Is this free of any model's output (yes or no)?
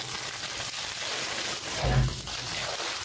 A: yes